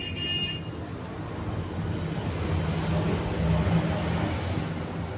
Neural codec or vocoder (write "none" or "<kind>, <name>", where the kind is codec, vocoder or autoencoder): none